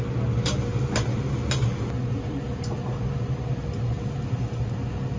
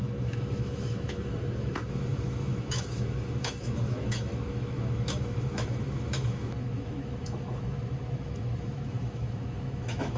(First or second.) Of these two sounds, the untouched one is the first